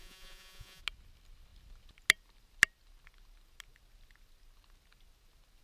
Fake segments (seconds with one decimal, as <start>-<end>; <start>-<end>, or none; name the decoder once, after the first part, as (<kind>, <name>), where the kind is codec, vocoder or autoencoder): 0.0-0.8 (vocoder, Vocos)